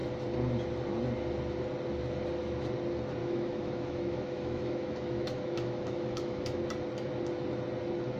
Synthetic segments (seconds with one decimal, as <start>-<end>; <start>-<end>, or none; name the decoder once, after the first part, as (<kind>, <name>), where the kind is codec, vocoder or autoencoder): 3.2-6.6 (autoencoder, DAC-VAE)